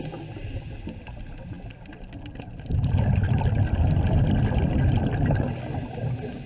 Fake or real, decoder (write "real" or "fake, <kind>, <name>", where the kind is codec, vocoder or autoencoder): real